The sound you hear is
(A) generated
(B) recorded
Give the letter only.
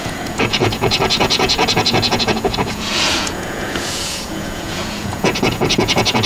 A